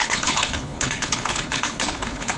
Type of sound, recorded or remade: remade